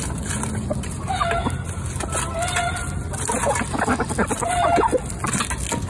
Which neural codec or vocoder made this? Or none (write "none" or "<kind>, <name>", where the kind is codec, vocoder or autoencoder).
none